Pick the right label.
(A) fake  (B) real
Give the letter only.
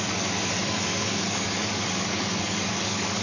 A